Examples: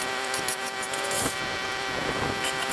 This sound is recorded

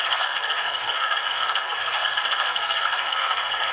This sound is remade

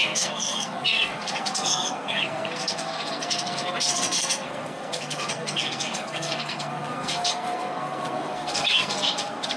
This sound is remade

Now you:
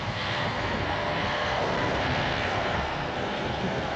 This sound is remade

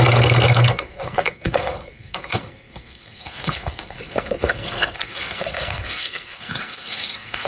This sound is remade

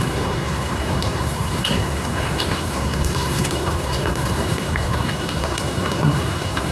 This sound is remade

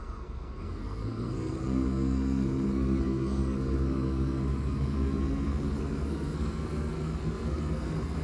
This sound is remade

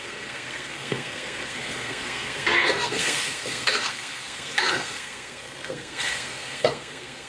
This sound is remade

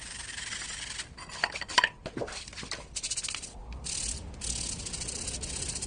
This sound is recorded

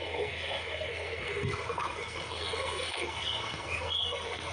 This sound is remade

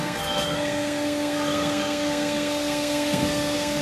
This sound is remade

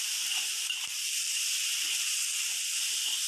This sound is recorded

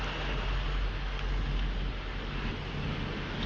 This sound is recorded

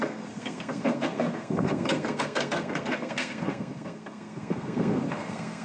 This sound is remade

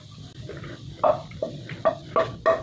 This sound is recorded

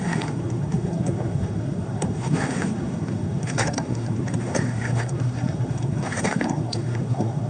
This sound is remade